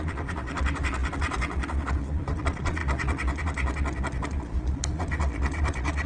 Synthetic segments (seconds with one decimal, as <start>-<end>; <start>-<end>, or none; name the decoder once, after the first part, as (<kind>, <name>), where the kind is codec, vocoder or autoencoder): 0.0-6.1 (vocoder, Vocos)